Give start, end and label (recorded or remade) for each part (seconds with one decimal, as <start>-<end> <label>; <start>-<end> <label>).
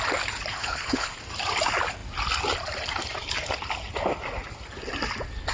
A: 0.0-0.5 recorded; 0.5-1.2 remade; 1.2-5.5 recorded